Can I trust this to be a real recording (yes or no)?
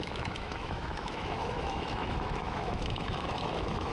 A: no